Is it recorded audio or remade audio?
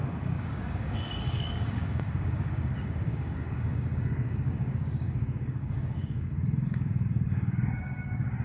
remade